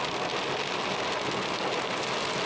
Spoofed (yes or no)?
no